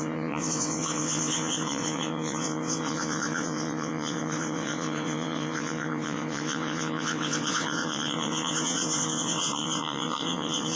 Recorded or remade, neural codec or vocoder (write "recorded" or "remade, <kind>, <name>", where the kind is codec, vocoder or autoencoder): remade, vocoder, WaveNeXt